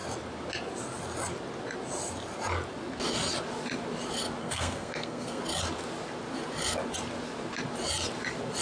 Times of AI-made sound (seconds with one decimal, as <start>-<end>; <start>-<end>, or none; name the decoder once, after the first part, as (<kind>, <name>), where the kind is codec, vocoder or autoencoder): 4.4-5.4 (codec, SNAC)